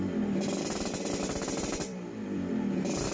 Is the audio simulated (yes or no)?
yes